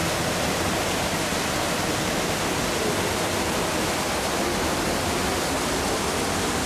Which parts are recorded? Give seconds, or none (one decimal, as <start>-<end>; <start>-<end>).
0.6-6.7